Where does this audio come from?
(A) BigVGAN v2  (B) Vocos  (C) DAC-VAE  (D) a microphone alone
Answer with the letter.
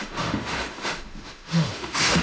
C